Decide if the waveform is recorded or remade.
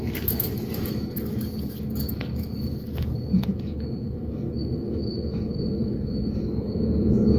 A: remade